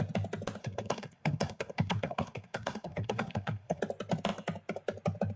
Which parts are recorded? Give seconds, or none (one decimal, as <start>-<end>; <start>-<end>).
0.0-0.6; 3.8-5.4